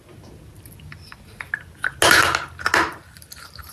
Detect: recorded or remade recorded